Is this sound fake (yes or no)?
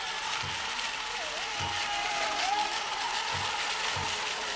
no